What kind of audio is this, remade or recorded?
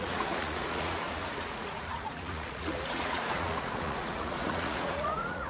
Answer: remade